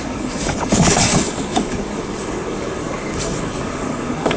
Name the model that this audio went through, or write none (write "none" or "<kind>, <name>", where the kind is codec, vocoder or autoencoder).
codec, DAC